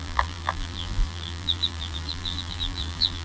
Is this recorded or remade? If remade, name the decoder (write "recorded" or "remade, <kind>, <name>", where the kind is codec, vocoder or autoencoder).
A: remade, vocoder, BigVGAN v2